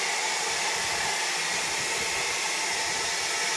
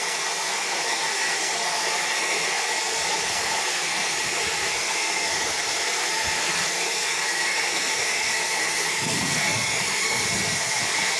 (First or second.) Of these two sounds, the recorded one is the first